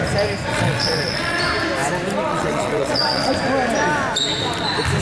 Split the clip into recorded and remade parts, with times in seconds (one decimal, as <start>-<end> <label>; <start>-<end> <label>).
0.0-0.5 recorded; 0.5-1.4 remade; 1.4-2.3 recorded; 2.3-3.3 remade; 3.3-5.0 recorded